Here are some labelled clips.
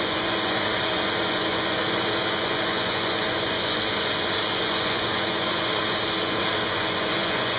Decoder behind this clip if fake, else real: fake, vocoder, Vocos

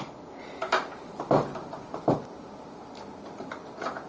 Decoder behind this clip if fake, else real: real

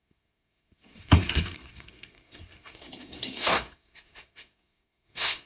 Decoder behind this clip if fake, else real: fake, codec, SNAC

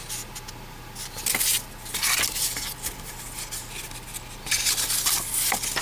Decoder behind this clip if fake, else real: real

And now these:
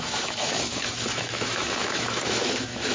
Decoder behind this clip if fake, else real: fake, autoencoder, DAC-VAE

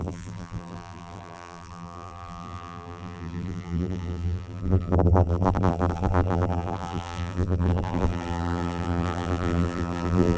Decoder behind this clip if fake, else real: fake, vocoder, BigVGAN v2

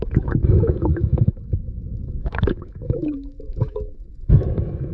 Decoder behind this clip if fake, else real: fake, autoencoder, DAC-VAE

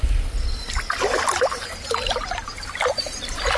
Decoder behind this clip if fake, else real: real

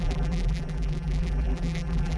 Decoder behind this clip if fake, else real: fake, vocoder, BigVGAN v2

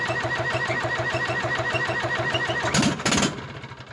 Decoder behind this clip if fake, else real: real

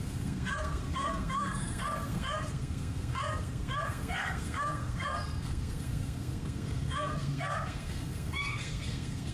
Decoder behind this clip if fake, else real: fake, codec, SNAC